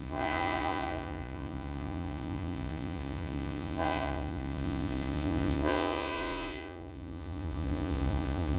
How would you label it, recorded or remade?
remade